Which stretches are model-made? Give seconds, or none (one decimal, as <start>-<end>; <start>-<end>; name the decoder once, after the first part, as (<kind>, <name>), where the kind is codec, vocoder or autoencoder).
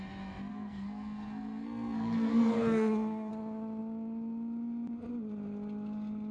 0.5-3.3 (codec, SNAC)